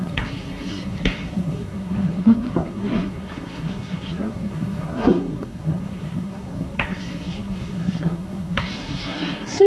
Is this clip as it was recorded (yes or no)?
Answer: no